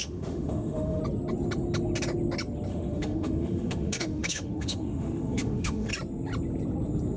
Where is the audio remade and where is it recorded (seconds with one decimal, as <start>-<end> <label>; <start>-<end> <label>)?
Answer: 0.0-1.0 remade; 1.0-2.7 recorded; 2.7-5.9 remade; 5.9-7.2 recorded

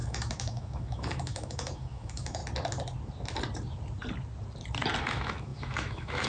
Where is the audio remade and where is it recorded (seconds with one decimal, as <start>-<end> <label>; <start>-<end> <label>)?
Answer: 0.0-2.4 remade; 2.4-5.0 recorded; 5.0-6.3 remade

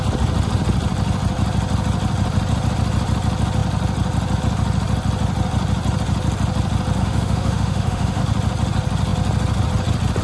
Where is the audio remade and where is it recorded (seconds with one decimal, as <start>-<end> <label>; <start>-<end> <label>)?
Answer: 0.0-7.0 recorded; 7.0-8.2 remade; 8.2-10.2 recorded

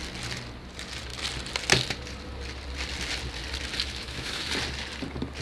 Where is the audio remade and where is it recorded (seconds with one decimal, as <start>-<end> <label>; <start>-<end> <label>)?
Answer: 0.0-3.8 recorded; 3.8-4.5 remade; 4.5-5.4 recorded

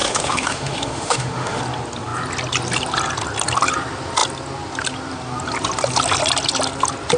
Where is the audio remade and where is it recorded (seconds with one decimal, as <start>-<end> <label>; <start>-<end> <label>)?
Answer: 0.0-1.6 remade; 1.6-7.2 recorded

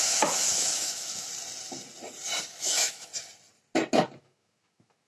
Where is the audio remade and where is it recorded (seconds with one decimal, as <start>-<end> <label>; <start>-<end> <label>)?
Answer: 0.0-1.3 remade; 1.3-2.5 recorded; 2.5-3.1 remade; 3.1-4.2 recorded; 4.2-5.1 remade

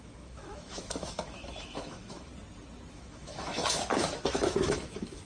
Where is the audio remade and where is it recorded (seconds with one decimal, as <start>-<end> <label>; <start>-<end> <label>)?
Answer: 0.0-2.3 remade; 2.3-2.9 recorded; 2.9-5.3 remade